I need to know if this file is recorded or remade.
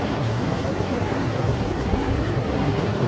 remade